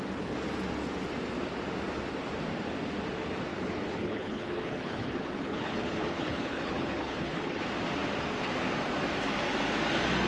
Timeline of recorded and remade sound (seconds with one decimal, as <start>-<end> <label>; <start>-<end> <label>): 0.0-3.5 recorded; 3.5-7.6 remade; 7.6-10.3 recorded